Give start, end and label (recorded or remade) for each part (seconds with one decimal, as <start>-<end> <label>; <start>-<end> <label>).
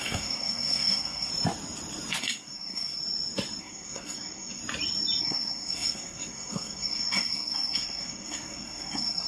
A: 0.0-1.3 remade; 1.3-2.2 recorded; 2.2-3.0 remade; 3.0-3.6 recorded; 3.6-4.6 remade; 4.6-5.2 recorded; 5.2-9.3 remade